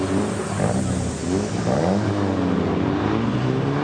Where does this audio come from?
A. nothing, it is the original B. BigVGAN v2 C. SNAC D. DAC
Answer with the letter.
A